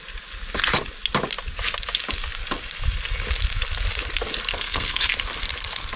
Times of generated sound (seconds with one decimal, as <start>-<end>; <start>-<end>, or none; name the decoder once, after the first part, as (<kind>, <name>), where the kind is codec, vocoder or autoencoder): 4.5-5.1 (codec, SNAC)